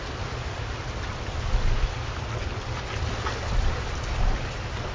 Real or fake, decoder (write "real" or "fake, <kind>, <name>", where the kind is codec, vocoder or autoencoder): real